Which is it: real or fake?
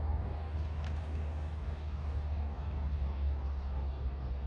fake